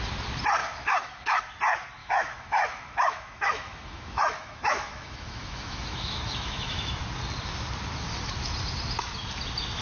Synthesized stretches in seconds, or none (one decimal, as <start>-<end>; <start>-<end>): 0.6-1.4; 2.0-7.0